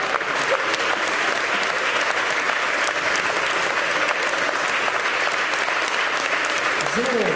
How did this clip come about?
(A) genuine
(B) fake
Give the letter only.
A